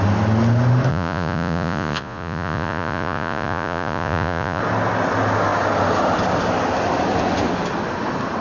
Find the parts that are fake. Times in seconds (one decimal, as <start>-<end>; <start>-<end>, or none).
0.9-4.6